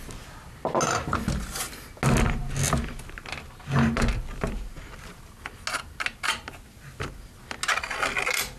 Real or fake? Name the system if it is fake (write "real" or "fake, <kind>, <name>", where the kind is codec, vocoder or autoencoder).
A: real